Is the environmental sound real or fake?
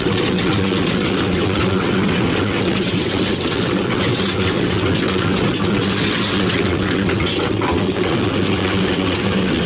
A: fake